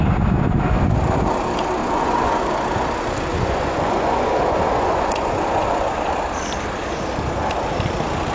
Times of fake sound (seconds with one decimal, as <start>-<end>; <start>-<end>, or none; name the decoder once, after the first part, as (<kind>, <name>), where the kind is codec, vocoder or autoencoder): 1.8-2.5 (vocoder, Vocos); 3.3-6.1